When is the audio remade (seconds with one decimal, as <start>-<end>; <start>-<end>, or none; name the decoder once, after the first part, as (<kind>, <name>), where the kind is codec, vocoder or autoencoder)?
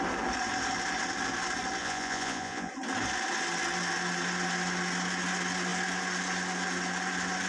1.8-2.7 (vocoder, Vocos)